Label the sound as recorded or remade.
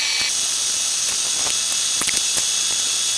recorded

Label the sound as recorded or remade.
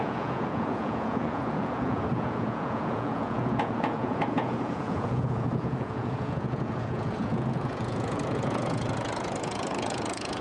remade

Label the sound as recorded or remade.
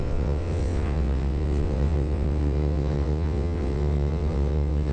remade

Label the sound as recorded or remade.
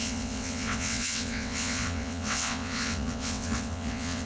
remade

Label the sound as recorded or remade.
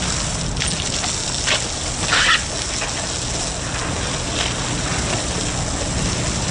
recorded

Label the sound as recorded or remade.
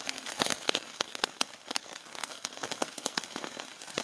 remade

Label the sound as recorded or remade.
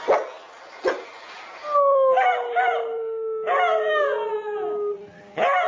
recorded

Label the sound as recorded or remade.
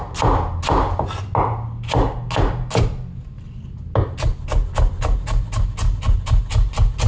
recorded